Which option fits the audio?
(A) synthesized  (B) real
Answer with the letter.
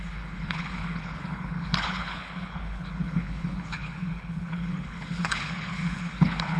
A